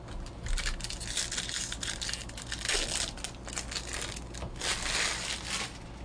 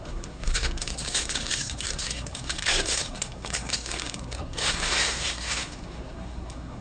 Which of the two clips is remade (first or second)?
second